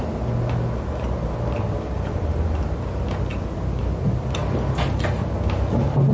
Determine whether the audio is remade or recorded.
recorded